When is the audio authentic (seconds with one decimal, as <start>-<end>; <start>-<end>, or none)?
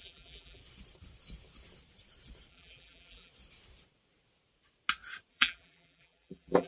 0.6-2.5; 3.3-5.3